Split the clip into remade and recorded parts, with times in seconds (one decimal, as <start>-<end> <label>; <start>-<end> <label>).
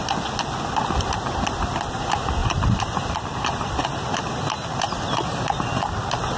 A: 0.0-2.4 recorded; 2.4-3.1 remade; 3.1-6.4 recorded